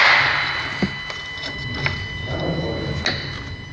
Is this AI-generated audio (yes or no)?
no